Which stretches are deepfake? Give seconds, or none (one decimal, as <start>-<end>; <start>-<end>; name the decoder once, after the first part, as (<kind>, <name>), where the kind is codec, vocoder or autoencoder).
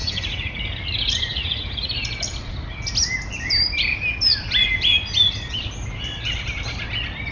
0.0-0.6 (vocoder, Vocos); 1.3-1.9